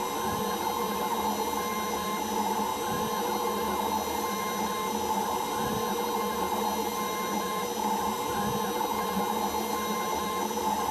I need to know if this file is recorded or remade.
recorded